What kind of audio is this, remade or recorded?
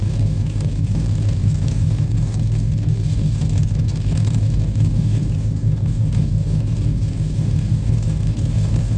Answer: remade